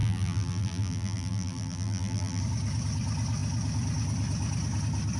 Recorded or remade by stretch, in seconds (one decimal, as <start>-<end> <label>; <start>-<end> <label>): 0.0-2.4 remade; 2.4-5.2 recorded